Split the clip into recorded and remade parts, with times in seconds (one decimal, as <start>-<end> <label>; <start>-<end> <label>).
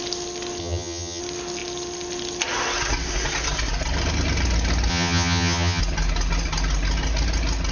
0.0-0.6 recorded; 0.6-1.2 remade; 1.2-4.9 recorded; 4.9-5.8 remade; 5.8-7.7 recorded